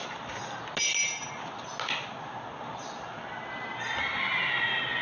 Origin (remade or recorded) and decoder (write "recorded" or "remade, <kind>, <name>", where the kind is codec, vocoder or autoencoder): recorded